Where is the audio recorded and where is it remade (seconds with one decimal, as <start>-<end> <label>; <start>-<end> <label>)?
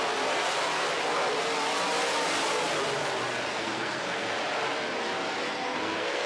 0.0-3.5 recorded; 3.5-4.3 remade; 4.3-5.4 recorded; 5.4-6.3 remade